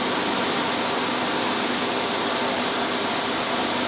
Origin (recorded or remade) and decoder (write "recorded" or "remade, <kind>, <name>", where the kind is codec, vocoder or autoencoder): recorded